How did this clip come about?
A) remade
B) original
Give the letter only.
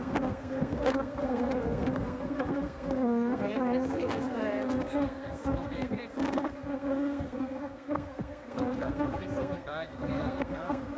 A